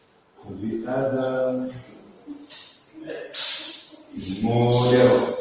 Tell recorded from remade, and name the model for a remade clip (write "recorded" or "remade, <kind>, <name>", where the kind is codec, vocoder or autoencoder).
recorded